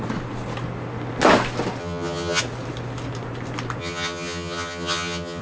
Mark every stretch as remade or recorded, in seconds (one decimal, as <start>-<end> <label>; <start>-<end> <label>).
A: 0.0-1.8 recorded; 1.8-2.4 remade; 2.4-3.8 recorded; 3.8-5.4 remade